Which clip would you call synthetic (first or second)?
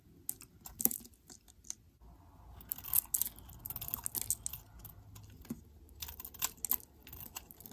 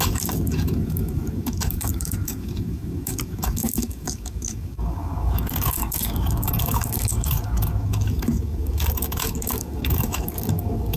second